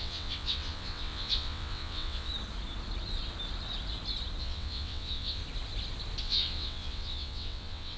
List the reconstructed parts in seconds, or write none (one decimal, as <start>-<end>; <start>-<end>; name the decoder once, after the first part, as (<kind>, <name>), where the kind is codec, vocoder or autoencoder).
0.0-2.3 (vocoder, WaveNeXt); 4.4-5.4; 6.2-8.0

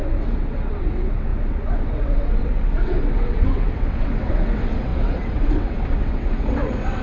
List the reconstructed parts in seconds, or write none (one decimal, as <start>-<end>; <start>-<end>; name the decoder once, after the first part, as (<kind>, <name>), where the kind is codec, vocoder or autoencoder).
0.0-7.0 (vocoder, WaveNeXt)

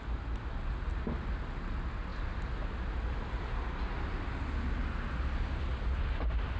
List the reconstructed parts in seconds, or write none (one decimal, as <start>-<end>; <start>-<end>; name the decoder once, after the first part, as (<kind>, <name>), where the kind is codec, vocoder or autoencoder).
none

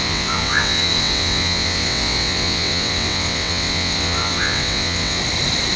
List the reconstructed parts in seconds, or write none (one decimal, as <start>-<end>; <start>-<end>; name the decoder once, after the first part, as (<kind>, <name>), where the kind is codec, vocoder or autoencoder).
0.0-5.2 (vocoder, WaveNeXt)

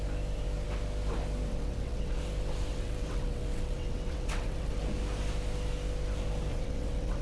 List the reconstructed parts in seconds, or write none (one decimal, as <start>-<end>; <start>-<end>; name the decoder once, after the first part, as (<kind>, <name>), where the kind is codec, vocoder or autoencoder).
1.5-2.2 (vocoder, WaveNeXt); 2.7-4.8; 6.5-7.2

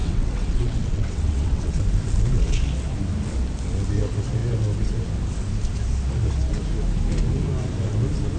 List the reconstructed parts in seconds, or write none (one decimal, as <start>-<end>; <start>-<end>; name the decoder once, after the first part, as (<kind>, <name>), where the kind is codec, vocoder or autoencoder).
0.0-1.8 (vocoder, WaveNeXt)

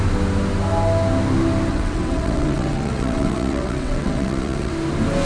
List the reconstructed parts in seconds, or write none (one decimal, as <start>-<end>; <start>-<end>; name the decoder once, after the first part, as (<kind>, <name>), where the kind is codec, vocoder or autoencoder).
1.7-4.7 (vocoder, WaveNeXt)